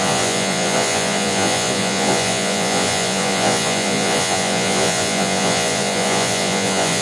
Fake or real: fake